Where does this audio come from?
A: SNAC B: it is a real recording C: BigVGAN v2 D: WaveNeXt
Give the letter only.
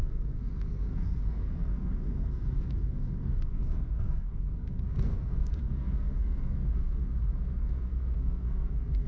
A